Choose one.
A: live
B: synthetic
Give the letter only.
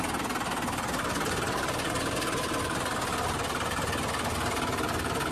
A